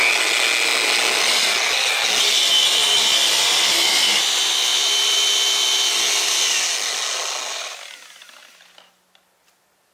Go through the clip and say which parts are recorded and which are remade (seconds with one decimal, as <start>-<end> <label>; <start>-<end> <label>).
0.0-4.7 recorded; 4.7-5.3 remade; 5.3-9.9 recorded

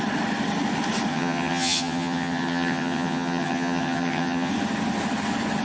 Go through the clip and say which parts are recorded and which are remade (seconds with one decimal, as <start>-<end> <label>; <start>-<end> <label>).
0.0-1.1 recorded; 1.1-4.5 remade; 4.5-5.6 recorded

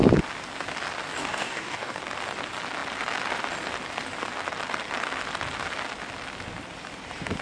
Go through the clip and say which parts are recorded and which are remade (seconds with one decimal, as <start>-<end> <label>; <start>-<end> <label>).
0.0-1.2 recorded; 1.2-2.0 remade; 2.0-7.4 recorded

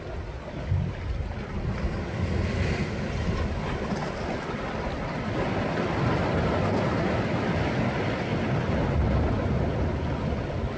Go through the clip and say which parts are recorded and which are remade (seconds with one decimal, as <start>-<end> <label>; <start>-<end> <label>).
0.0-10.8 recorded

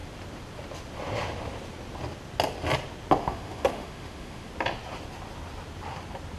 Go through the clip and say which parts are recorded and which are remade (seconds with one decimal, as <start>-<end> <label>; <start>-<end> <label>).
0.0-3.2 recorded; 3.2-4.5 remade; 4.5-6.4 recorded